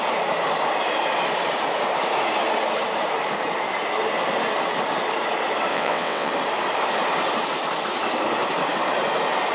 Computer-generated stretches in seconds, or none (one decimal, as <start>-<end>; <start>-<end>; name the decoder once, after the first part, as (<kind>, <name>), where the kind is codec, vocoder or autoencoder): 5.7-6.3 (vocoder, WaveNeXt)